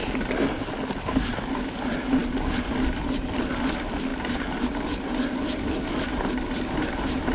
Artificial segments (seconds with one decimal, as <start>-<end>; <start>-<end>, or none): none